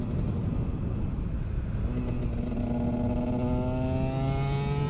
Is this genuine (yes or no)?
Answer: yes